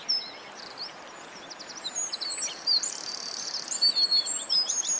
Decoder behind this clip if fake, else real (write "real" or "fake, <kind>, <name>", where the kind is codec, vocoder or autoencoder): real